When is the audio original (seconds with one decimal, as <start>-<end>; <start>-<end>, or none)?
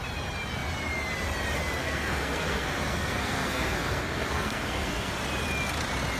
0.0-1.8; 5.1-6.2